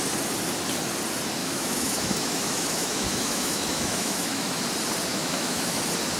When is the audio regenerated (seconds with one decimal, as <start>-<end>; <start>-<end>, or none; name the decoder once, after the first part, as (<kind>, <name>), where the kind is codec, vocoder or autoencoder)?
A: 1.4-4.6 (autoencoder, DAC-VAE); 5.1-5.8